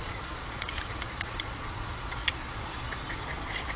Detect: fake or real fake